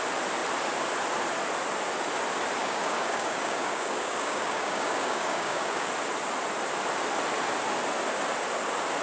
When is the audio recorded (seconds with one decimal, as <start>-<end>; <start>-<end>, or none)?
0.0-2.6; 5.9-9.0

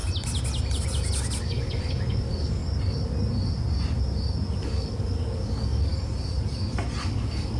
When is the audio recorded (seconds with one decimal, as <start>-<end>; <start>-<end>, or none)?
0.0-1.4; 2.6-4.6; 5.9-7.0

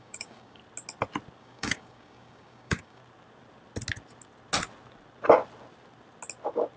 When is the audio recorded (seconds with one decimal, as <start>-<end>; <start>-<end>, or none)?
0.6-1.4; 3.0-6.8

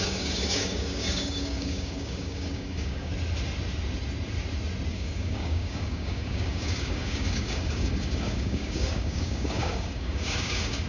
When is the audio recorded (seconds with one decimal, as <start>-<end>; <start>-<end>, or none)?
3.1-4.9

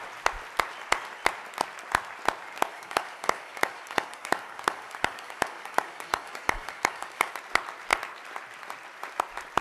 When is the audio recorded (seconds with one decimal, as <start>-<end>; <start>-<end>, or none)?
0.0-2.7; 7.3-9.6